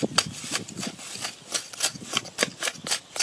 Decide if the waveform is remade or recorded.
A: recorded